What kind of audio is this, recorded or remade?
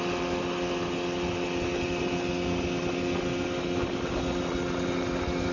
recorded